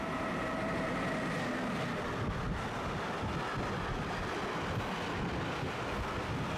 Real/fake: real